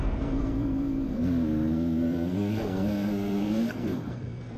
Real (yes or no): no